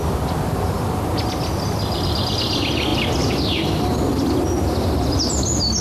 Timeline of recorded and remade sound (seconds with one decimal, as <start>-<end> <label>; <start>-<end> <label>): 0.0-5.8 recorded